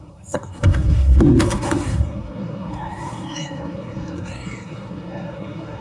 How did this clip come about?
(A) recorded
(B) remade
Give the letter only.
B